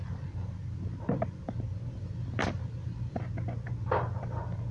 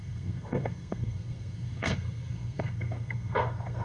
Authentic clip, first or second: first